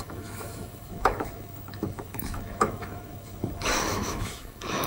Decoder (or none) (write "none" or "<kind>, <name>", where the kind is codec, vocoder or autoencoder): autoencoder, DAC-VAE